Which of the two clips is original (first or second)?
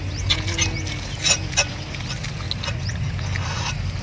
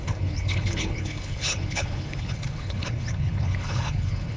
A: first